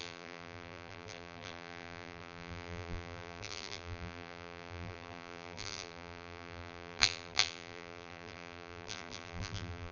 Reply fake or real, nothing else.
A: fake